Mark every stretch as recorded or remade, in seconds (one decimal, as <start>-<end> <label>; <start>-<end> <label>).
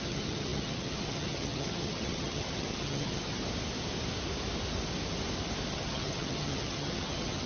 0.0-3.4 remade; 3.4-5.7 recorded; 5.7-7.5 remade